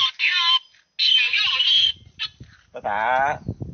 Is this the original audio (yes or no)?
yes